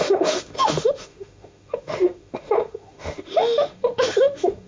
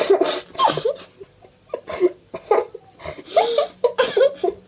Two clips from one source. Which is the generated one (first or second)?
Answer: first